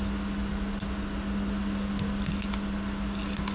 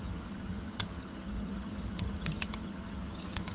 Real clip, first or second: first